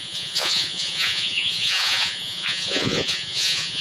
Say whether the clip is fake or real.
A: fake